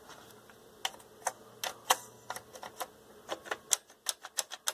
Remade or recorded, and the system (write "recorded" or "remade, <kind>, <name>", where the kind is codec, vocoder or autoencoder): recorded